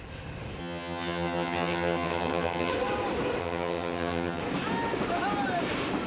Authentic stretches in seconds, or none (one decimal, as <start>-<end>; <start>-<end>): 0.0-0.6; 2.7-3.4; 4.4-6.1